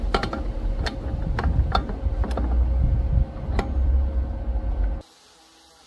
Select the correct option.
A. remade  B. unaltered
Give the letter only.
B